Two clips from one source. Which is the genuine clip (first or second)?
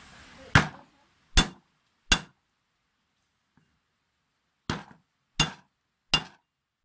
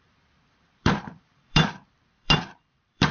first